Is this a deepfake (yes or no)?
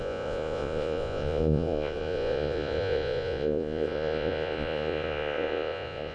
yes